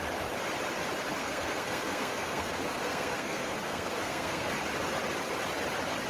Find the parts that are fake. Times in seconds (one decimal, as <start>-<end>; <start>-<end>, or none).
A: 1.2-4.5